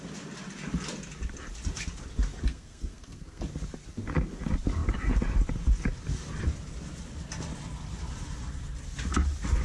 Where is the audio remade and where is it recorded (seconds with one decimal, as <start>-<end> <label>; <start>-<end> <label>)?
0.0-2.5 recorded; 2.5-3.4 remade; 3.4-9.6 recorded